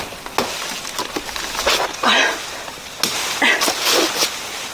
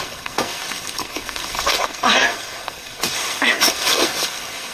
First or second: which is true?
first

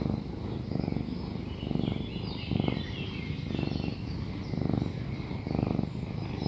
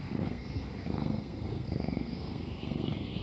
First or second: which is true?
first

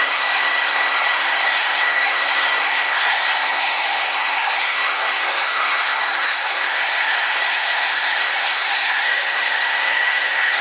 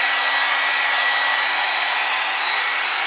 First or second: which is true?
second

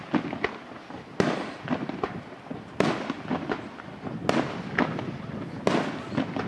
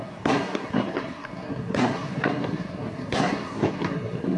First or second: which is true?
first